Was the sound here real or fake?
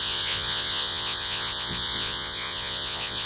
fake